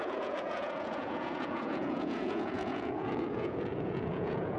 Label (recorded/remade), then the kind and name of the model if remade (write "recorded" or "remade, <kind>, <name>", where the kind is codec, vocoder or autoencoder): remade, vocoder, Vocos